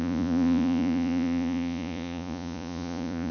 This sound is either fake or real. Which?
fake